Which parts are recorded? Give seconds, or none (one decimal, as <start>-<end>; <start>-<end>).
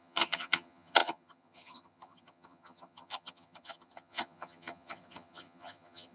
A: none